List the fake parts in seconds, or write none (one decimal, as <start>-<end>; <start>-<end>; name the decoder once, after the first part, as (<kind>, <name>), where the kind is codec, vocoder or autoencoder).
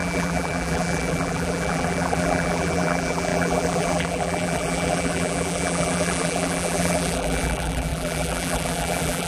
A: 0.0-9.3 (vocoder, BigVGAN v2)